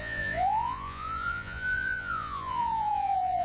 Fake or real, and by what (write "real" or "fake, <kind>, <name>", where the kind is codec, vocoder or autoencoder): fake, vocoder, Vocos